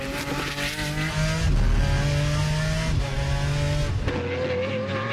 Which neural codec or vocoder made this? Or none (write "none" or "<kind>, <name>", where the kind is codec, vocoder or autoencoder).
none